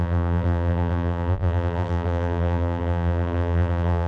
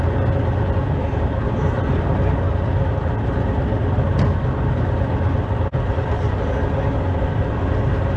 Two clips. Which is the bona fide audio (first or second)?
second